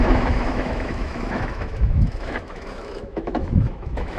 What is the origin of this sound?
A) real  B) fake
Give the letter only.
B